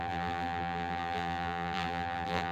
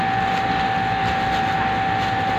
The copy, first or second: first